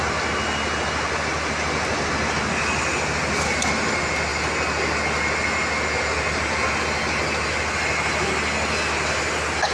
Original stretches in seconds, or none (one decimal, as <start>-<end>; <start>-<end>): 0.0-9.7